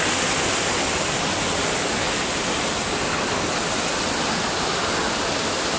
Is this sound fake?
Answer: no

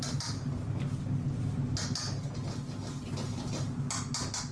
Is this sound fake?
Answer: no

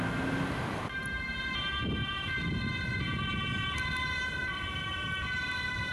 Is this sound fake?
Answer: no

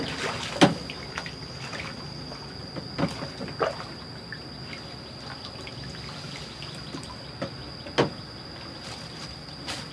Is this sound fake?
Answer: no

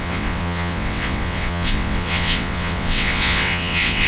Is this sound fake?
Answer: yes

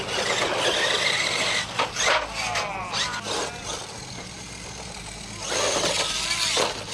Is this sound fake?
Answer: no